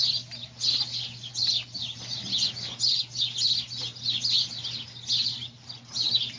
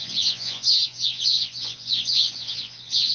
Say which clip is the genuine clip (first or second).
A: first